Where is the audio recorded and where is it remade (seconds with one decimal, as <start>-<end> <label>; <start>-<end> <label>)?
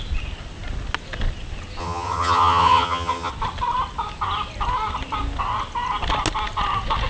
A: 0.0-1.8 recorded; 1.8-3.3 remade; 3.3-7.1 recorded